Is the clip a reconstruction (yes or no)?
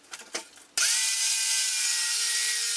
no